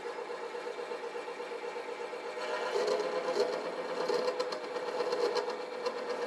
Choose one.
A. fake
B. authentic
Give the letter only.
B